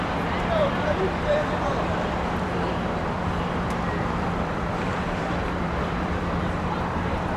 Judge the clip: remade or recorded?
remade